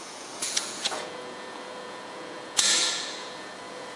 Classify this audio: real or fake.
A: fake